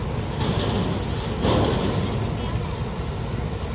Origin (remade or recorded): recorded